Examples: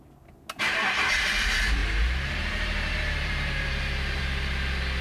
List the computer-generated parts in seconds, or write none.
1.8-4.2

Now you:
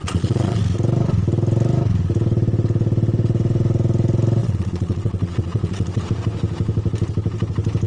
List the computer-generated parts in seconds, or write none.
0.0-0.6; 4.4-6.0

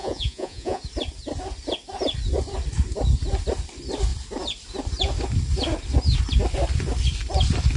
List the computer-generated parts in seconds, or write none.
0.0-0.8

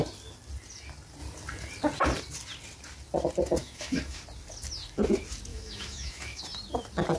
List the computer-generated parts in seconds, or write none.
3.6-4.2; 5.5-6.4

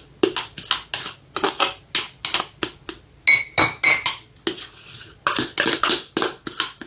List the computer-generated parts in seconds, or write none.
none

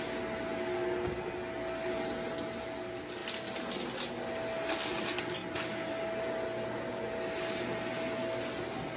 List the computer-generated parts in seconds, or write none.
none

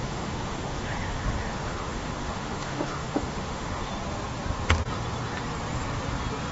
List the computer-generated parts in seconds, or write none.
0.0-3.9